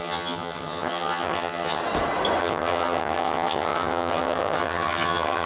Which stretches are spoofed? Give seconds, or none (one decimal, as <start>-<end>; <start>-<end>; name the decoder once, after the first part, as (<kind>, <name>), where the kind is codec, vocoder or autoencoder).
0.0-1.8 (vocoder, HiFi-GAN); 2.4-5.5

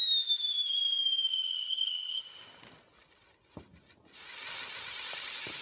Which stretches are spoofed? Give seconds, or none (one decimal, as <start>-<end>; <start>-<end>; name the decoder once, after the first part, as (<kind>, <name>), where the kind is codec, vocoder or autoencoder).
1.3-2.2 (vocoder, HiFi-GAN)

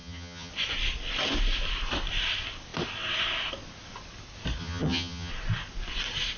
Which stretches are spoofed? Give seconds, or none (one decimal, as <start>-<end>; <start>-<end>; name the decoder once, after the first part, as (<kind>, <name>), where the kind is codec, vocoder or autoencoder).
0.0-0.5 (vocoder, HiFi-GAN); 4.6-5.3

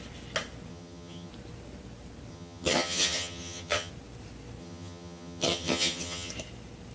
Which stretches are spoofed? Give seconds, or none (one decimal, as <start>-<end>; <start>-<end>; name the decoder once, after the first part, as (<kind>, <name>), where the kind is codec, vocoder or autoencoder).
0.7-1.3 (vocoder, HiFi-GAN); 2.3-3.9; 4.6-6.3

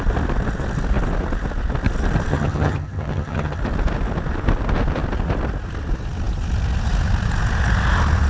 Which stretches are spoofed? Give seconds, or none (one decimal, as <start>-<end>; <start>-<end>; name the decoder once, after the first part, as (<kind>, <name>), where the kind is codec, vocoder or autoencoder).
2.3-3.6 (vocoder, HiFi-GAN)

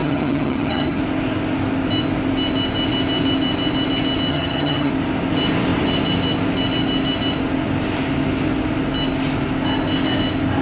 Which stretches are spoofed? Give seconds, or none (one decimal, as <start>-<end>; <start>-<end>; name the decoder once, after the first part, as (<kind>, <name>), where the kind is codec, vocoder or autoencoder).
0.0-1.0 (vocoder, HiFi-GAN); 4.3-4.9

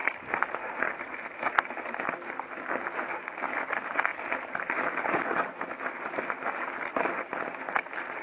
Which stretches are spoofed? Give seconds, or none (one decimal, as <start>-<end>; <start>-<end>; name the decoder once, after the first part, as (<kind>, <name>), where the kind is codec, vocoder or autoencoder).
none

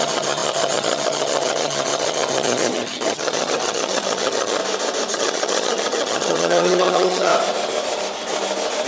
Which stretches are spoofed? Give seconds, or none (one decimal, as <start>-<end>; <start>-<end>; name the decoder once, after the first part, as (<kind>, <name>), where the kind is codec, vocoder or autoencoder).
0.0-4.6 (vocoder, HiFi-GAN); 5.1-7.3